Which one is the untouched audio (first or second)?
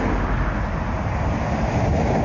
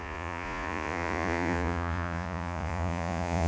first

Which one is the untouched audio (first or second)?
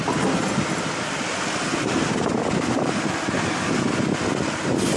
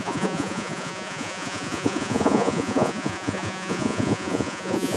first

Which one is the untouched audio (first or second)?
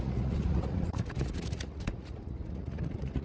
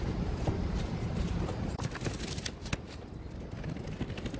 second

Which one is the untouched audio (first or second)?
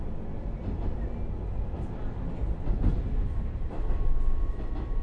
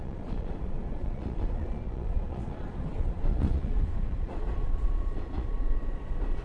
first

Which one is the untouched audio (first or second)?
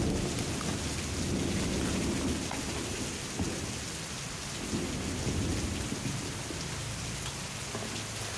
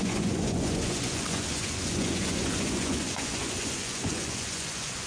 first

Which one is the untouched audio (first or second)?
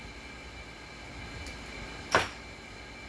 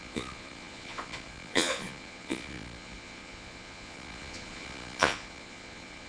first